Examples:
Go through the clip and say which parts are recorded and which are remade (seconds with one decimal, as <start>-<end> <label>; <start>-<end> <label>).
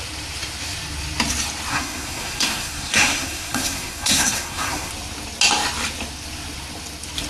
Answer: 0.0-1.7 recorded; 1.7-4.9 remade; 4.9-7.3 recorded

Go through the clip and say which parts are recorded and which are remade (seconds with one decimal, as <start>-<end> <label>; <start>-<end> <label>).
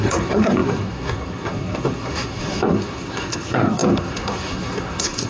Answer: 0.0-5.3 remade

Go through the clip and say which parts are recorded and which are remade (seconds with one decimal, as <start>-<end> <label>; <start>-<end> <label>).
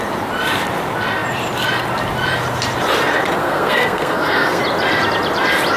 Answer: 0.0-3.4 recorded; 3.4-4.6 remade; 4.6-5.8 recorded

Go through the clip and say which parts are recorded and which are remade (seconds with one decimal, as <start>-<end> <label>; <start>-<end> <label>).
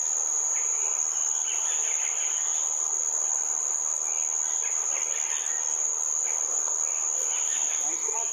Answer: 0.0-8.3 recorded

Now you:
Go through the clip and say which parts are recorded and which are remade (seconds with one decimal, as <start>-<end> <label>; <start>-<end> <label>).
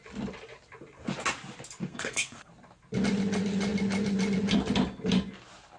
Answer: 0.0-1.9 recorded; 1.9-2.5 remade; 2.5-5.8 recorded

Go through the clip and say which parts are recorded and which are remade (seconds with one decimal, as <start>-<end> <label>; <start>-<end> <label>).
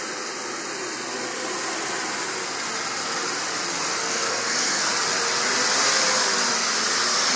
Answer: 0.0-4.0 recorded; 4.0-4.9 remade; 4.9-7.4 recorded